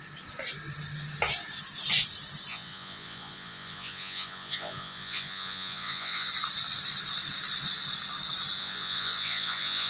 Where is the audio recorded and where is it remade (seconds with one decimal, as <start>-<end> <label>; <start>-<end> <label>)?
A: 0.0-2.5 recorded; 2.5-6.3 remade; 6.3-8.6 recorded; 8.6-9.9 remade